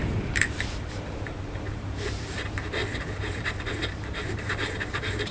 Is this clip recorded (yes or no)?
no